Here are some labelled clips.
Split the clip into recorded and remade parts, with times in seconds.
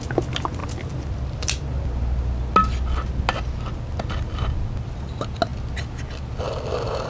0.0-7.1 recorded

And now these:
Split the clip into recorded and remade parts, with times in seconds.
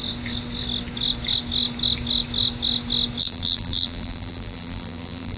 0.0-3.2 recorded; 3.2-5.4 remade